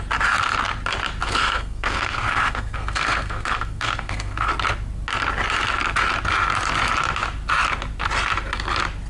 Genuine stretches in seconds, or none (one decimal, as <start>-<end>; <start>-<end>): 0.0-1.2; 4.5-9.1